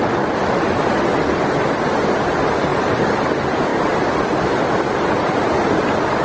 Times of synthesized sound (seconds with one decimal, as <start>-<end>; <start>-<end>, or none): none